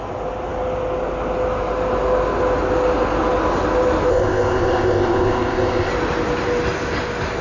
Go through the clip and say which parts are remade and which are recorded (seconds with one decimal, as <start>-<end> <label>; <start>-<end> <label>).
0.0-4.1 recorded; 4.1-5.9 remade; 5.9-7.4 recorded